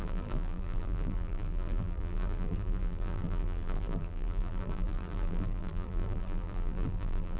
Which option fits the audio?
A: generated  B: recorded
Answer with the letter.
A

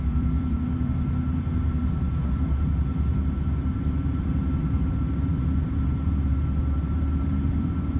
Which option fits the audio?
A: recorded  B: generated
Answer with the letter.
B